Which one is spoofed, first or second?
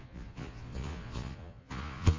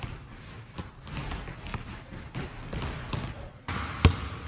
first